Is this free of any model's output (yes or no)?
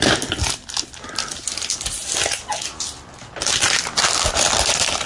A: yes